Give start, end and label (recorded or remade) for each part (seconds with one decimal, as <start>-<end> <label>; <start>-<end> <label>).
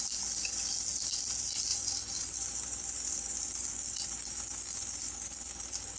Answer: 0.0-1.7 recorded; 1.7-4.3 remade; 4.3-6.0 recorded